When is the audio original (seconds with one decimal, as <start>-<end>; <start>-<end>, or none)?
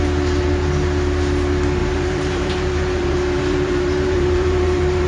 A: 0.0-1.8